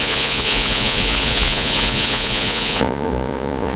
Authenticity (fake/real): fake